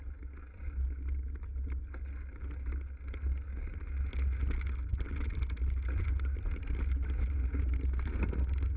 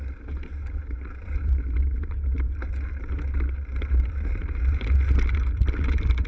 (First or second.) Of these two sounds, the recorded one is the first